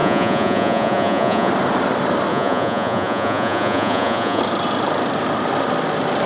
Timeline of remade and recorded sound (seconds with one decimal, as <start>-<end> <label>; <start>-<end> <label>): 0.0-1.5 remade; 1.5-2.3 recorded; 2.3-4.4 remade; 4.4-6.3 recorded